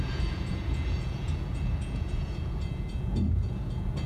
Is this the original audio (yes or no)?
no